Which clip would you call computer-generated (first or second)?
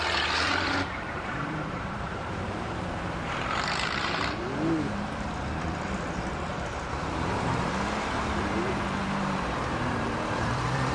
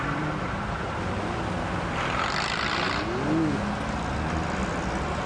first